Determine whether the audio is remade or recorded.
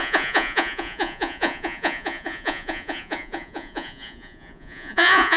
remade